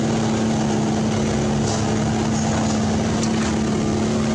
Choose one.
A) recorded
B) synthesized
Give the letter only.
A